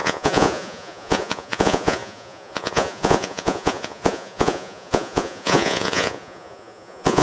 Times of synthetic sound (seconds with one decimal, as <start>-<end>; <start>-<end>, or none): 0.0-7.2